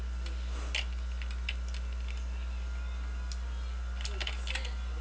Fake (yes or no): no